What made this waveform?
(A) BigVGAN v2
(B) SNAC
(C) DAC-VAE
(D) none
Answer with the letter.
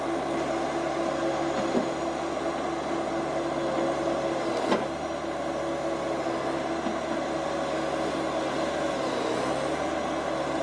D